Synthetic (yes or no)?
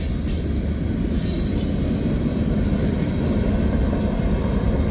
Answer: no